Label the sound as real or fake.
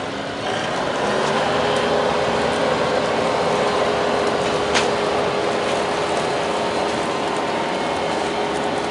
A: real